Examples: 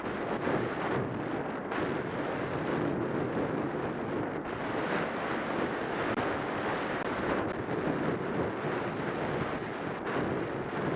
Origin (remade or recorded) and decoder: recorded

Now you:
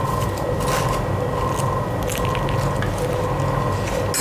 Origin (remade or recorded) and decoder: recorded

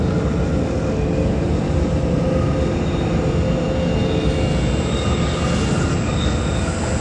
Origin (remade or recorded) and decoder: recorded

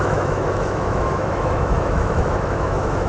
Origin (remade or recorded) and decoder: remade, autoencoder, DAC-VAE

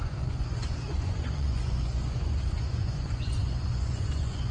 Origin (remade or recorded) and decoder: remade, vocoder, Vocos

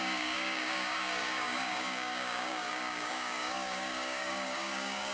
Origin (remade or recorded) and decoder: remade, codec, DAC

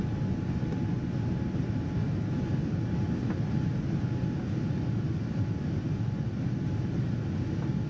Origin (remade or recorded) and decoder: recorded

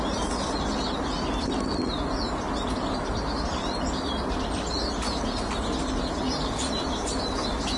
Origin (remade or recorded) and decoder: recorded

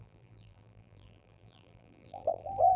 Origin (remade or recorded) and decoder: remade, vocoder, BigVGAN v2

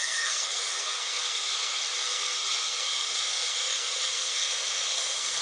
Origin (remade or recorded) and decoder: remade, codec, SNAC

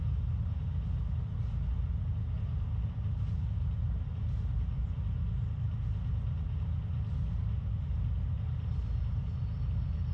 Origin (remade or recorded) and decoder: recorded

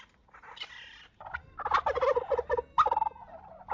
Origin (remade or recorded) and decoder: recorded